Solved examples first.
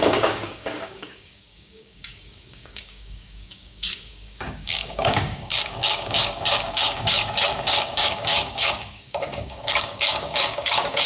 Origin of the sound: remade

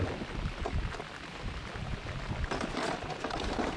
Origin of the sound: recorded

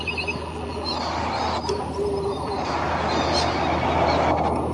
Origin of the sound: recorded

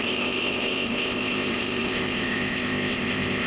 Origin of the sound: remade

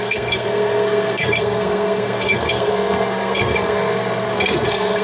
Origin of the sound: remade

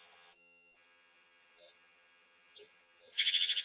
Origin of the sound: remade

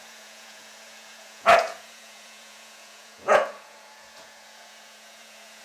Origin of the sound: remade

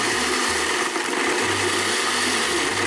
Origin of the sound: recorded